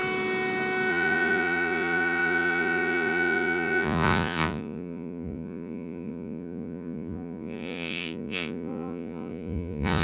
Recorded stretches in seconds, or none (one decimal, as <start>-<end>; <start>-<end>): 0.0-0.9